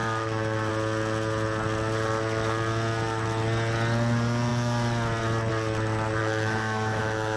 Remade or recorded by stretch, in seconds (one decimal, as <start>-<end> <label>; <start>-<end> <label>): 0.0-0.7 remade; 0.7-6.2 recorded; 6.2-7.4 remade